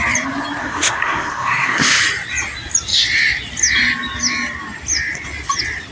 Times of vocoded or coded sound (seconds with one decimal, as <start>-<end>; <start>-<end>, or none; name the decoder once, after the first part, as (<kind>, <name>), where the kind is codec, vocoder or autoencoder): 0.6-2.0 (codec, SNAC)